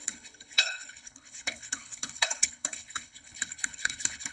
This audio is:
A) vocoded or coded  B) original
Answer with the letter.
A